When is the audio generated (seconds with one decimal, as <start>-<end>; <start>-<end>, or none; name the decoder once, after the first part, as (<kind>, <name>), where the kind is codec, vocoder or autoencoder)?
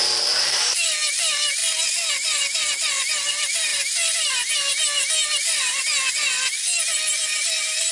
0.0-1.6 (vocoder, BigVGAN v2); 2.1-6.5; 7.1-7.9